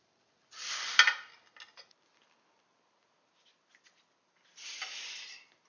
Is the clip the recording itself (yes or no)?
yes